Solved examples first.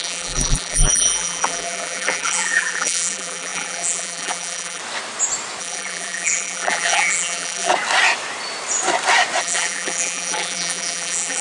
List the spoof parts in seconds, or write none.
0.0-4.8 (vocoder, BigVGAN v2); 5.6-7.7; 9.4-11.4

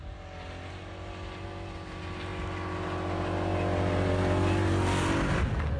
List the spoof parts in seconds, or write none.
none